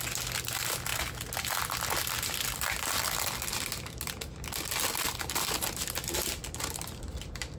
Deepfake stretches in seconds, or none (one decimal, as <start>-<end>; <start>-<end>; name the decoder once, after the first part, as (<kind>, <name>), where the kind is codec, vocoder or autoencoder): none